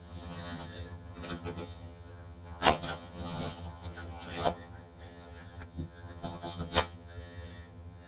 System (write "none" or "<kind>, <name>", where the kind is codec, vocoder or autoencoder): vocoder, HiFi-GAN